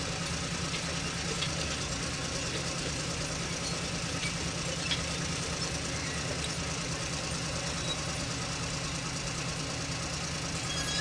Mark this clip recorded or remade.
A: recorded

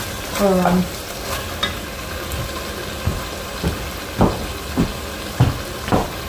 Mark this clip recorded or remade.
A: recorded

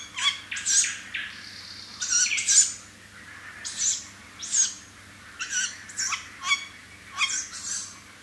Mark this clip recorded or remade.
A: recorded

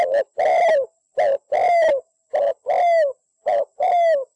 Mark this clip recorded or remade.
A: recorded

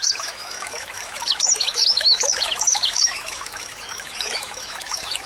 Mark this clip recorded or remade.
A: remade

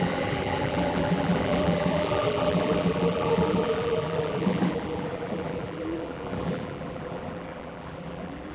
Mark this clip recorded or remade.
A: remade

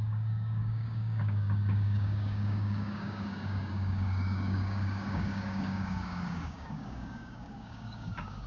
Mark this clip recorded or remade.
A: remade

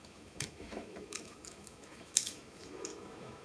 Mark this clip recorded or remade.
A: remade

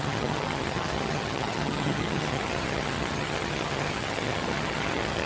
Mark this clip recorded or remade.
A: remade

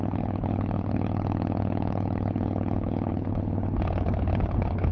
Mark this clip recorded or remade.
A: remade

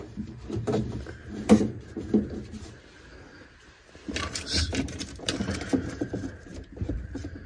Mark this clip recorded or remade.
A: remade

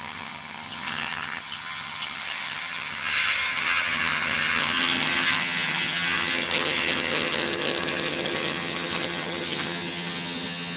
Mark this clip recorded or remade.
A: remade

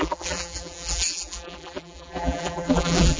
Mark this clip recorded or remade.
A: remade